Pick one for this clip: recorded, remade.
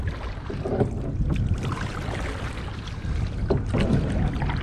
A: recorded